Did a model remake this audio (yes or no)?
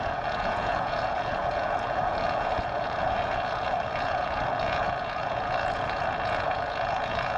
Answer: yes